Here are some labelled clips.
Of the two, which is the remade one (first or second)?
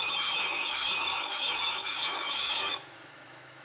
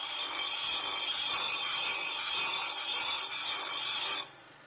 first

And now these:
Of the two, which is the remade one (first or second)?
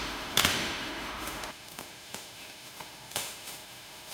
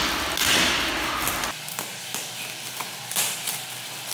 first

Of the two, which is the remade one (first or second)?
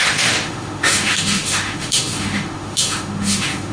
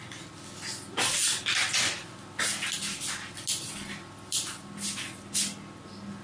first